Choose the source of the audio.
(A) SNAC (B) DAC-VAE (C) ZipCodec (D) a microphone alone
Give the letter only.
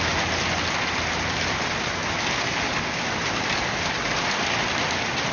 D